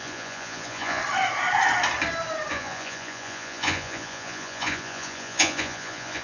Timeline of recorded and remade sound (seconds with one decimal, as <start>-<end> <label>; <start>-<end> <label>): 0.0-1.0 remade; 1.0-2.5 recorded; 2.5-6.2 remade